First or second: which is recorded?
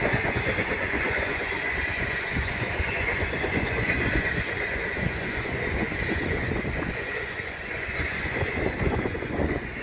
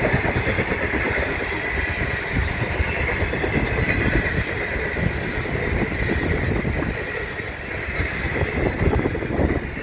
second